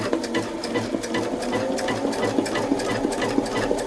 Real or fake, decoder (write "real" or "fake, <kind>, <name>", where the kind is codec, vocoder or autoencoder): real